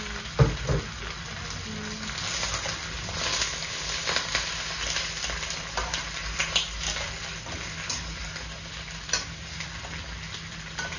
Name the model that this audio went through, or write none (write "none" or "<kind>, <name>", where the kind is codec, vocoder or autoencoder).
none